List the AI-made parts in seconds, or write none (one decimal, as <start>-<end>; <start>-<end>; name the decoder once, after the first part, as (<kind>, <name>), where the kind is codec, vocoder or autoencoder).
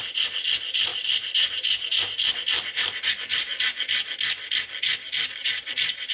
0.9-3.6 (vocoder, BigVGAN v2); 5.4-6.1